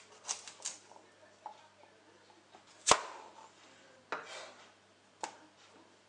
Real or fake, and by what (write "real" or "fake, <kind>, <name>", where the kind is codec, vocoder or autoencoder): real